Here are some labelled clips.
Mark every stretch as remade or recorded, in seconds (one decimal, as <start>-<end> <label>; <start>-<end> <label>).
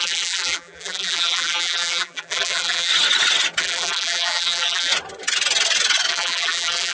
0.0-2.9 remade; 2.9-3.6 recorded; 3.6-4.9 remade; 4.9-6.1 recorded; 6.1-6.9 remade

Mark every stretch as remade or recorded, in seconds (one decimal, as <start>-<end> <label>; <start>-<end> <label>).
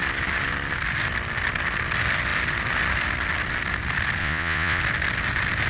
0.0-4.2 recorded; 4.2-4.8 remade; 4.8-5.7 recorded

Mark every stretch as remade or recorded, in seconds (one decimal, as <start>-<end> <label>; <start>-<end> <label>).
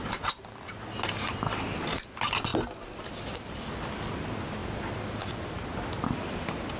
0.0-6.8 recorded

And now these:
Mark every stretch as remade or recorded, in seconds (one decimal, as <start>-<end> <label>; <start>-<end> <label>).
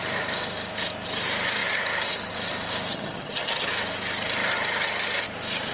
0.0-2.9 recorded; 2.9-3.7 remade; 3.7-5.7 recorded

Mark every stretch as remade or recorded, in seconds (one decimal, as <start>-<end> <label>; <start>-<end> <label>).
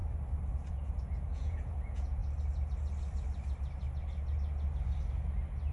0.0-0.7 recorded; 0.7-2.2 remade; 2.2-5.7 recorded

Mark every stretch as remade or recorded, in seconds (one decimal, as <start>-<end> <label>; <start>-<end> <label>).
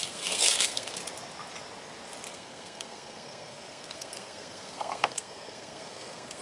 0.0-1.0 remade; 1.0-2.3 recorded; 2.3-6.4 remade